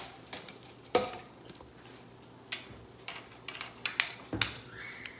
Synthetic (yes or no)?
no